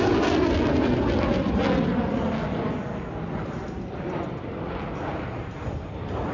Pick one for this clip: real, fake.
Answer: real